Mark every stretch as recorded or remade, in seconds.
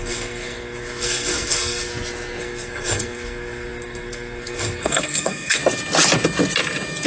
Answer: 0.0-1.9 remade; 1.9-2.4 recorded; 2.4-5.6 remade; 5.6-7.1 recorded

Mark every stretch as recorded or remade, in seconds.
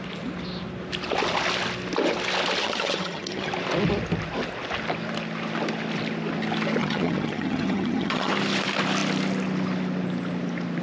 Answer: 0.0-2.6 recorded; 2.6-3.5 remade; 3.5-6.8 recorded; 6.8-8.3 remade; 8.3-10.8 recorded